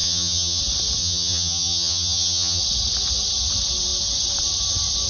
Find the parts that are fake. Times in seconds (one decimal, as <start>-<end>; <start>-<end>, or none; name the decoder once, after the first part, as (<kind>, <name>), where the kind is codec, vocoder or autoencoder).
0.0-0.6 (vocoder, HiFi-GAN); 1.0-2.6